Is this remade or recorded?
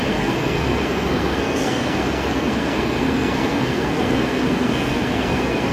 remade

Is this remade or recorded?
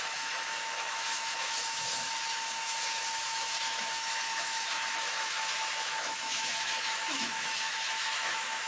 remade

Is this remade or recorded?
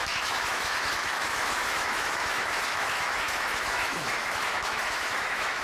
remade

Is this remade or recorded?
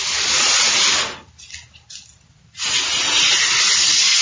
recorded